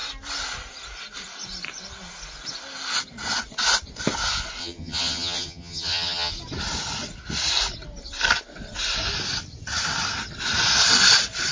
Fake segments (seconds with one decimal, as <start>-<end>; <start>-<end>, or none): 4.6-6.3